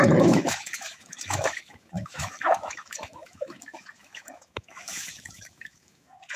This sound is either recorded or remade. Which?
remade